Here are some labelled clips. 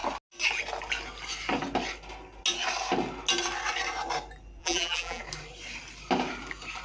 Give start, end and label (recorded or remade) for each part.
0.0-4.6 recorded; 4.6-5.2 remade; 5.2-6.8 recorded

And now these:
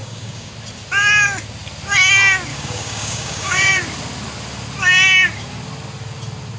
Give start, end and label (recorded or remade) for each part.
0.0-0.5 remade; 0.5-2.5 recorded; 2.5-3.7 remade; 3.7-6.6 recorded

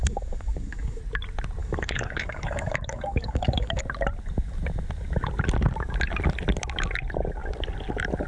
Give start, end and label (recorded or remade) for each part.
0.0-1.0 remade; 1.0-1.6 recorded; 1.6-3.8 remade; 3.8-8.3 recorded

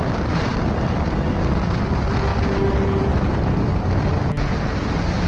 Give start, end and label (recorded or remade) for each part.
0.0-5.3 recorded

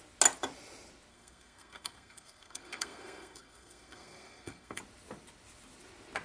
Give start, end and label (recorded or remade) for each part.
0.0-1.1 recorded; 1.1-4.8 remade; 4.8-6.2 recorded